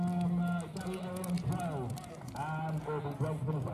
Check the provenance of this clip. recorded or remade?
recorded